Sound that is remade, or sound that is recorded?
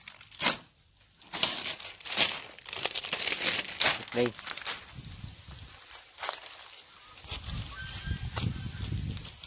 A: recorded